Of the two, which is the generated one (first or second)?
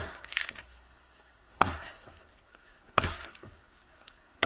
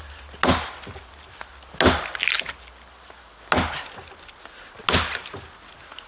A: first